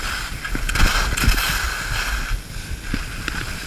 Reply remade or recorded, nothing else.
recorded